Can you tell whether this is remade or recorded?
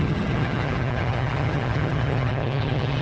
remade